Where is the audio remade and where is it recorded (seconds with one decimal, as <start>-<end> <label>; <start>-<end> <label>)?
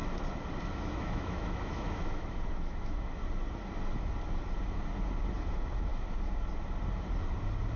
0.0-0.6 recorded; 0.6-3.2 remade; 3.2-5.5 recorded; 5.5-5.9 remade; 5.9-7.8 recorded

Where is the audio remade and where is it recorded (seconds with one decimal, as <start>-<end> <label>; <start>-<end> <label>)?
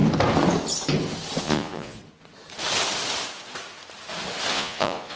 0.0-1.4 recorded; 1.4-2.0 remade; 2.0-4.5 recorded; 4.5-5.2 remade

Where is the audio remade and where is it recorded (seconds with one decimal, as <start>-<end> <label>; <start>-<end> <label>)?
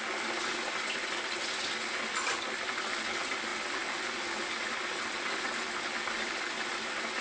0.0-7.2 recorded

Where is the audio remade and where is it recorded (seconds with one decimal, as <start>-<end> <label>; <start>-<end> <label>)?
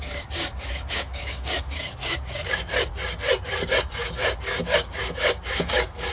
0.0-2.9 remade; 2.9-3.7 recorded; 3.7-6.1 remade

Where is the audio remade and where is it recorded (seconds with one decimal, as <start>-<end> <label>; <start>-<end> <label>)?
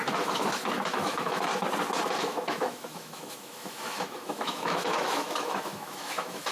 0.0-1.5 remade; 1.5-2.2 recorded; 2.2-6.5 remade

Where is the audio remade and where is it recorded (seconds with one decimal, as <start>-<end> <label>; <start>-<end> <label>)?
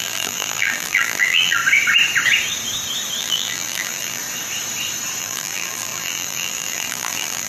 0.0-1.6 remade; 1.6-3.2 recorded; 3.2-4.2 remade; 4.2-5.2 recorded; 5.2-7.5 remade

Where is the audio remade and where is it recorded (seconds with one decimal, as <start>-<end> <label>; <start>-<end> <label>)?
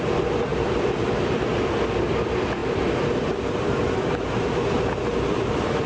0.0-0.5 recorded; 0.5-1.7 remade; 1.7-5.9 recorded